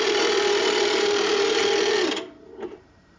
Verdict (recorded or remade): remade